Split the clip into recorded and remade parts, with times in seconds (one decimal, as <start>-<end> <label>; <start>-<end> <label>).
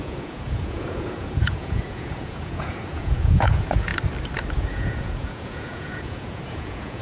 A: 0.0-3.9 remade; 3.9-4.5 recorded; 4.5-7.0 remade